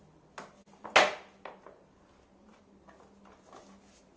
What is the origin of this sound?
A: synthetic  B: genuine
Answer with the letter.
B